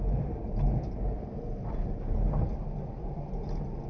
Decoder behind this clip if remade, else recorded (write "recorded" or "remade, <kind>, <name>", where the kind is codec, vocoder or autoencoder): recorded